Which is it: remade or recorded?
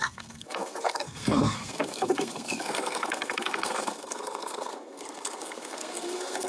remade